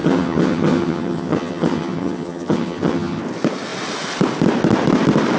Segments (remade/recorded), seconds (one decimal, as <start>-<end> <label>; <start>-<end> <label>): 0.0-3.2 remade; 3.2-5.4 recorded